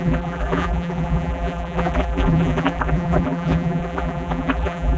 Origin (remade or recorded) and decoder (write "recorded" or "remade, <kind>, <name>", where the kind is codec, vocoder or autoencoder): remade, vocoder, BigVGAN v2